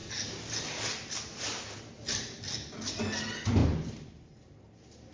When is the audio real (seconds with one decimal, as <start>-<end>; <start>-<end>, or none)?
0.0-5.1